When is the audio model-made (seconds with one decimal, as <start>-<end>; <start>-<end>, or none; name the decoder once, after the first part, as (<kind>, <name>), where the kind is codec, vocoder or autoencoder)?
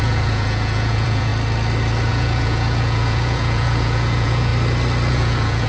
0.0-1.3 (vocoder, Vocos); 2.1-4.5; 5.1-5.7